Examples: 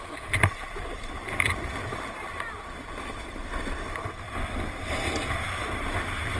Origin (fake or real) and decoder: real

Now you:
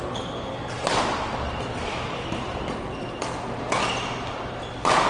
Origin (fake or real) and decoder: real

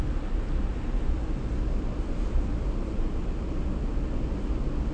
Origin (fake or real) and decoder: real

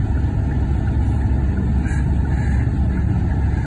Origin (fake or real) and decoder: real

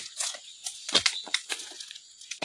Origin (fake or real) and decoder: fake, vocoder, Vocos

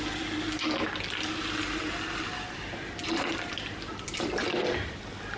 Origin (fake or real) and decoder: real